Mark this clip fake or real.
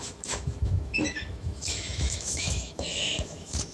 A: fake